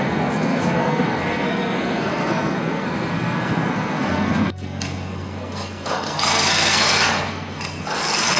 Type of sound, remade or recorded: remade